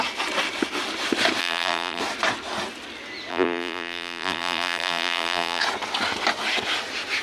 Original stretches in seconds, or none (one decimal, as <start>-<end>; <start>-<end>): 0.0-1.4; 2.0-3.3; 5.6-7.2